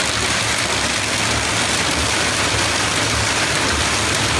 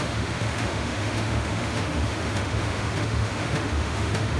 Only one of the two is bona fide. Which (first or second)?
first